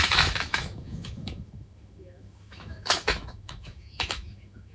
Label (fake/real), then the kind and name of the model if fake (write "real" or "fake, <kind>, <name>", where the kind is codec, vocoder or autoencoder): fake, autoencoder, DAC-VAE